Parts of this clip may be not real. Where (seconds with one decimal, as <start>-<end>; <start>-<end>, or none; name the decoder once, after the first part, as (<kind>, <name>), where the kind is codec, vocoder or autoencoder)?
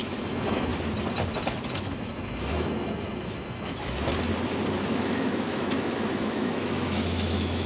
0.0-0.7 (autoencoder, DAC-VAE); 1.7-4.1; 4.8-7.7